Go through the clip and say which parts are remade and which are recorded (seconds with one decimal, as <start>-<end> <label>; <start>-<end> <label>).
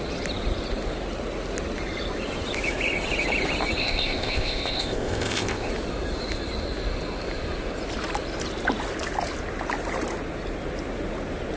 0.0-3.8 recorded; 3.8-5.7 remade; 5.7-11.6 recorded